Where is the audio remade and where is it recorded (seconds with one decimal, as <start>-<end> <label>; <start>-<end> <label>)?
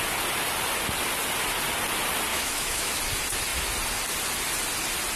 0.0-2.3 recorded; 2.3-3.0 remade; 3.0-5.2 recorded